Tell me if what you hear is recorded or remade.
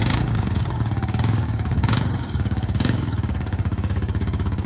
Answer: remade